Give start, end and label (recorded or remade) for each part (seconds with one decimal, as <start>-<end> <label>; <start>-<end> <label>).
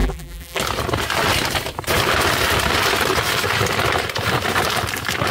0.0-0.6 remade; 0.6-5.3 recorded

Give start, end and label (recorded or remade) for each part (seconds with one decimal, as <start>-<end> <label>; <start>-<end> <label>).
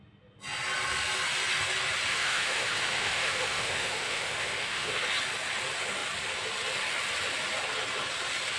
0.0-2.1 recorded; 2.1-5.1 remade; 5.1-8.6 recorded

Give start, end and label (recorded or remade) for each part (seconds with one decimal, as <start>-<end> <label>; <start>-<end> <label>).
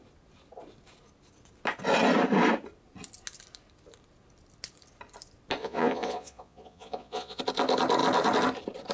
0.0-5.6 recorded; 5.6-7.4 remade; 7.4-8.9 recorded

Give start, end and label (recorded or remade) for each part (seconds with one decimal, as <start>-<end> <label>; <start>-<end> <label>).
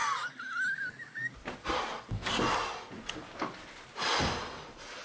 0.0-5.0 recorded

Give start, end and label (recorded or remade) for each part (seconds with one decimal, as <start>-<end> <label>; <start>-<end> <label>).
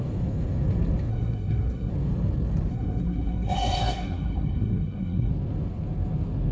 0.0-1.1 recorded; 1.1-1.9 remade; 1.9-2.7 recorded; 2.7-5.3 remade; 5.3-6.5 recorded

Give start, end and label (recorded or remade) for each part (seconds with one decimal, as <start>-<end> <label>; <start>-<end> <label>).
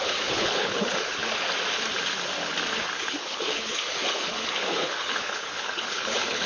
0.0-1.2 remade; 1.2-3.0 recorded; 3.0-6.5 remade